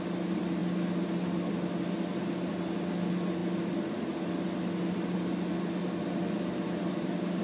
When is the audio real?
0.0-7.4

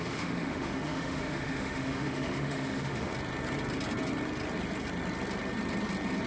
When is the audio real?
3.1-6.3

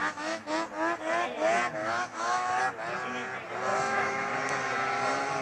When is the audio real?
0.5-1.8; 2.6-3.7; 4.3-5.4

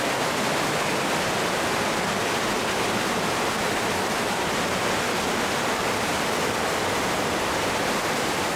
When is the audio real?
0.0-8.6